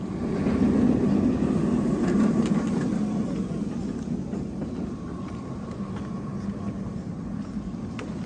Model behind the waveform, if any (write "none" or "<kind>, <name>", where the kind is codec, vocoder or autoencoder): none